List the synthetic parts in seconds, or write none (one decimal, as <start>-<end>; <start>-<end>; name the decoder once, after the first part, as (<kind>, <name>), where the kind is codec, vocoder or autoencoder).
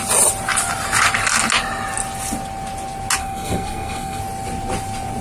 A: 3.2-4.2 (codec, SNAC)